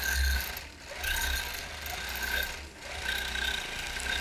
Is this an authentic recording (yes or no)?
yes